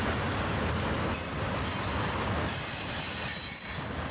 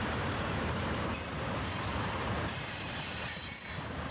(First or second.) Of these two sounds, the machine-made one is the second